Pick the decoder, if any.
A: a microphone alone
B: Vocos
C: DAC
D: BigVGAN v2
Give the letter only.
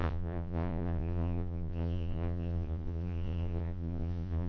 B